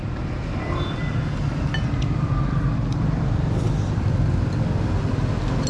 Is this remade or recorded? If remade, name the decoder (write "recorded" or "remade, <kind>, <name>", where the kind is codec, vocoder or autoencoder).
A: recorded